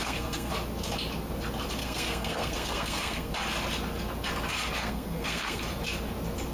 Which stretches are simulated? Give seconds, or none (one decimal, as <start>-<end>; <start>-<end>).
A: 0.0-0.5; 1.8-3.3; 4.8-5.6